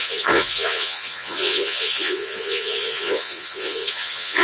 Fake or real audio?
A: fake